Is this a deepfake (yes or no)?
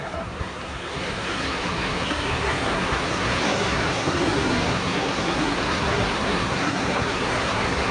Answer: yes